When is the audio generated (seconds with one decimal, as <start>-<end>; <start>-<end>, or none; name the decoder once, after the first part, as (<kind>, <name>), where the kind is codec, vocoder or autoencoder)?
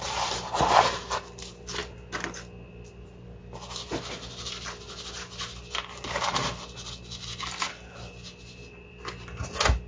none